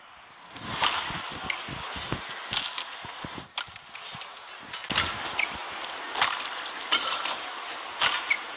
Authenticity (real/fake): real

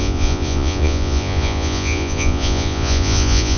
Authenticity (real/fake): fake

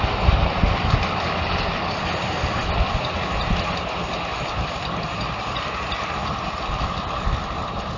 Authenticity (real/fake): real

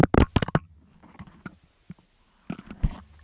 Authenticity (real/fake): real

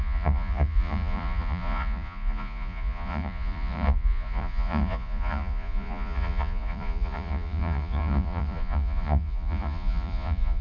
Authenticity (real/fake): fake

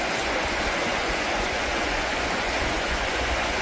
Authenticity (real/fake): fake